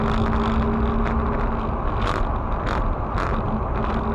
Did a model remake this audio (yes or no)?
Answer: no